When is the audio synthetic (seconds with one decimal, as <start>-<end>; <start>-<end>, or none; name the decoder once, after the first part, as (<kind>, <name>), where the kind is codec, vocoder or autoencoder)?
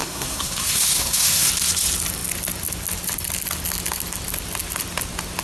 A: 0.0-1.5 (codec, SNAC)